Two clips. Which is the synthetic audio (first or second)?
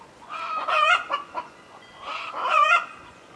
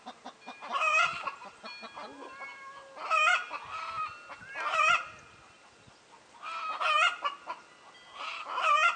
first